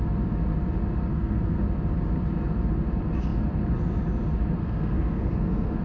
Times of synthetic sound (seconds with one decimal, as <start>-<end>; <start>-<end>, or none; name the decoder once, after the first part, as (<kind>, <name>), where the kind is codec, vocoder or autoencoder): 1.1-1.6 (codec, SNAC); 4.6-5.8